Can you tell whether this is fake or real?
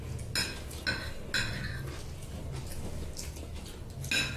real